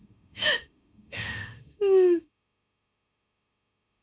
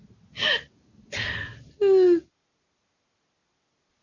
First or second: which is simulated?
first